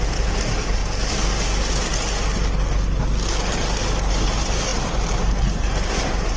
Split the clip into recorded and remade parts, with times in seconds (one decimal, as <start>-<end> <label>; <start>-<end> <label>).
0.0-0.8 remade; 0.8-4.1 recorded; 4.1-6.4 remade